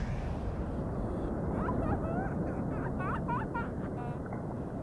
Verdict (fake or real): real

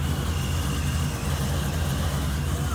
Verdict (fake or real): real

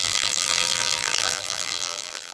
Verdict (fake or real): fake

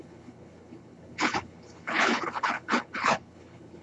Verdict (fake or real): fake